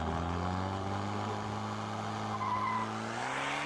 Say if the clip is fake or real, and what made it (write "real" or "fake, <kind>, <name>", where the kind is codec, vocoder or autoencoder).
real